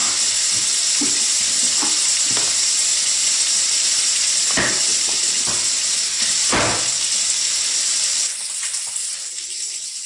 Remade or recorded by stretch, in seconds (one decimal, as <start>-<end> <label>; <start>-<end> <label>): 0.0-10.1 recorded